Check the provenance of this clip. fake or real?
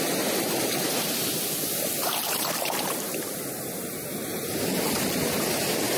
fake